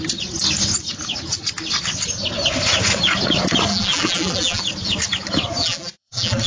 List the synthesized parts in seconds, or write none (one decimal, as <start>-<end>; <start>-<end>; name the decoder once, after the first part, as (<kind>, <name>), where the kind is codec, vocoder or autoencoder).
3.7-4.6 (vocoder, BigVGAN v2); 5.6-6.5